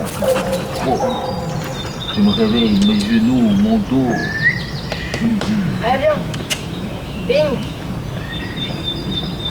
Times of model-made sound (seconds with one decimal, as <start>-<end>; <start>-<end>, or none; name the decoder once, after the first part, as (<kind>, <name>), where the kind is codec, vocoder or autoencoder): 5.3-7.8 (autoencoder, DAC-VAE)